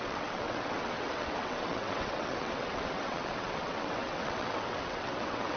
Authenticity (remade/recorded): remade